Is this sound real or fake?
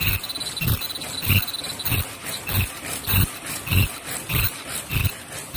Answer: real